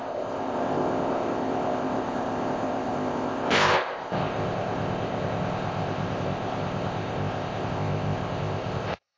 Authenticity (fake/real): fake